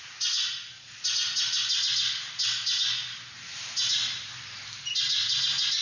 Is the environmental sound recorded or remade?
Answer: recorded